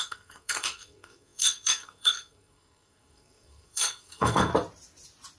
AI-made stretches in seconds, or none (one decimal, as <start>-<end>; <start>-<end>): 0.0-4.5